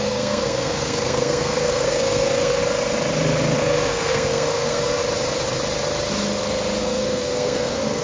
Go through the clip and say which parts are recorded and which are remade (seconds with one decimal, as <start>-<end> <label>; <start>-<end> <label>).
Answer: 0.0-2.6 remade; 2.6-3.6 recorded; 3.6-5.0 remade; 5.0-6.8 recorded; 6.8-8.0 remade